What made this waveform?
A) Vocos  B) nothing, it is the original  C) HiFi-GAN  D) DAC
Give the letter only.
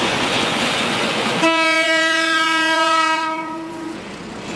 A